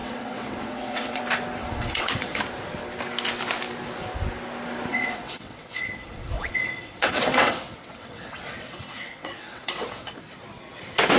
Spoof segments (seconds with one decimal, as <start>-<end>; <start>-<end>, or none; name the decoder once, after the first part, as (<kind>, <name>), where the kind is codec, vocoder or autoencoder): 0.0-1.2 (vocoder, WaveNeXt); 1.6-2.4; 4.9-10.1